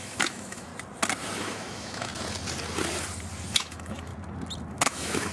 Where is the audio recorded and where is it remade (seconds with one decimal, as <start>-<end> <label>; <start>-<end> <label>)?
0.0-0.7 remade; 0.7-1.4 recorded; 1.4-2.1 remade; 2.1-3.5 recorded; 3.5-4.1 remade; 4.1-4.7 recorded; 4.7-5.3 remade